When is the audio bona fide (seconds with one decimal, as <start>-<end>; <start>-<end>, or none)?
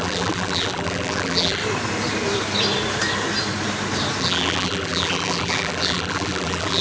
1.6-4.2